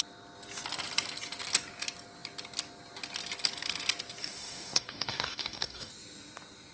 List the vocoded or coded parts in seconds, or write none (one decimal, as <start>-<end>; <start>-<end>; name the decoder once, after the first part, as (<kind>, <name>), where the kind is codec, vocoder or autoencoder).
4.2-5.9 (codec, DAC)